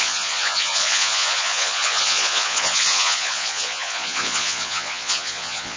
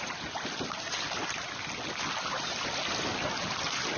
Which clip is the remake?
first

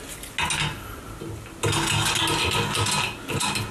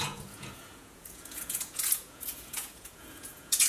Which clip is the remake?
second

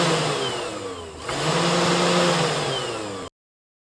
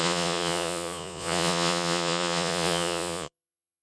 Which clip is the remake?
second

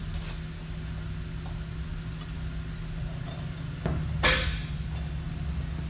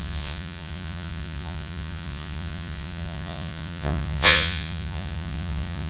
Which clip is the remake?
second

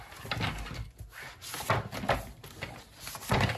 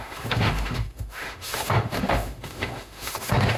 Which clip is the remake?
second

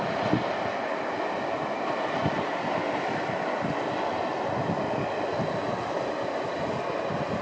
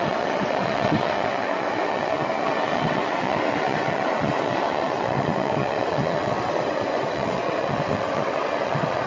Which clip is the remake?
second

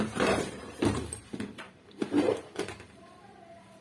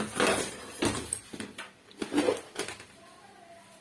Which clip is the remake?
first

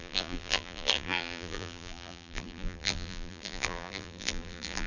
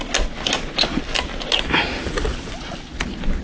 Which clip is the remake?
first